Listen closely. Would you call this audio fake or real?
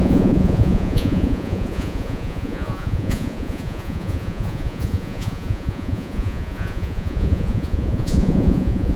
fake